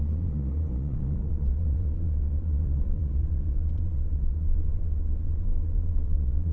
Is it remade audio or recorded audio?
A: remade